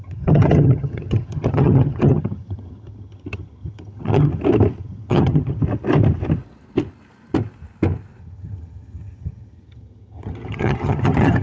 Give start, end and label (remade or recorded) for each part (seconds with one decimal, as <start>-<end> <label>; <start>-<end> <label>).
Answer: 0.0-4.3 remade; 4.3-4.8 recorded; 4.8-5.6 remade; 5.6-8.2 recorded; 8.2-11.4 remade